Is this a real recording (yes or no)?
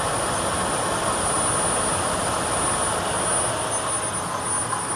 yes